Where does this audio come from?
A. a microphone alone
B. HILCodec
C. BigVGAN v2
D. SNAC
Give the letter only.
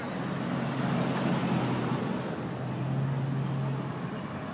A